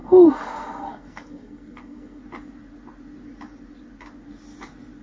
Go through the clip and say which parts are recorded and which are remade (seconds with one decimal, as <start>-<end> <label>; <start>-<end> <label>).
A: 0.0-2.2 remade; 2.2-5.0 recorded